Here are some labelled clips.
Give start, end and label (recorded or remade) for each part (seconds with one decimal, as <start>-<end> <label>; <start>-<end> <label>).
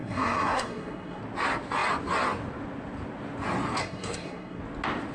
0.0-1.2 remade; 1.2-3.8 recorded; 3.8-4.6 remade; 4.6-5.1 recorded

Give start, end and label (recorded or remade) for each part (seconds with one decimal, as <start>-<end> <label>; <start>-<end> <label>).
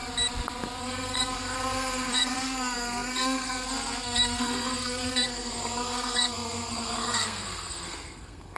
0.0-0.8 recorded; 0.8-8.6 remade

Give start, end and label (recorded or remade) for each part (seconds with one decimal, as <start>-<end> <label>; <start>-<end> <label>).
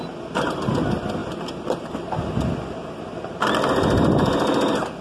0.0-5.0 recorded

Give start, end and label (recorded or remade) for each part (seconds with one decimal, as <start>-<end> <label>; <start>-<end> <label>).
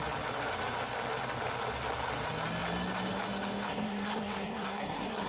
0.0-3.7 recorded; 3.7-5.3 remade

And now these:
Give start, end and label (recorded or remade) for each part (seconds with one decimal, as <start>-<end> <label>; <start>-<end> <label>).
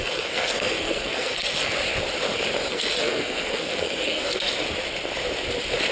0.0-1.7 remade; 1.7-2.7 recorded; 2.7-4.5 remade; 4.5-5.9 recorded